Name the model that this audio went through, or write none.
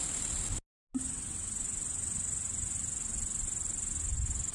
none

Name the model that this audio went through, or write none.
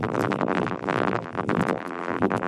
vocoder, BigVGAN v2